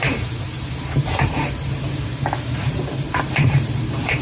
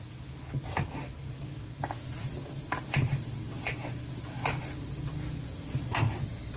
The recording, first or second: second